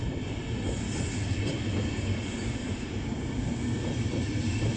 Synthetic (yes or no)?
no